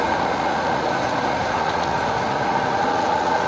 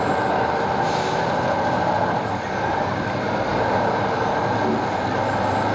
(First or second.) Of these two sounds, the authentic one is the second